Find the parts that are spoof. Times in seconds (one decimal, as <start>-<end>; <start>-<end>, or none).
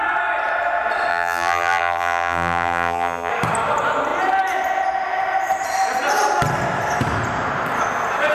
1.1-3.3